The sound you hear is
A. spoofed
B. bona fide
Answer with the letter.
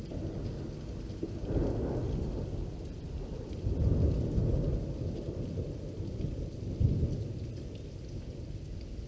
B